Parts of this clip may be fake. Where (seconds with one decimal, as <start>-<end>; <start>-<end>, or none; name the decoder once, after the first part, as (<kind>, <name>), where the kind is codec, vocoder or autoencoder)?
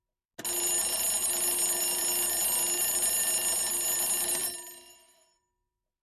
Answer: 4.4-5.4 (vocoder, BigVGAN v2)